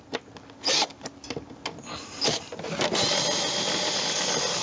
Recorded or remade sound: recorded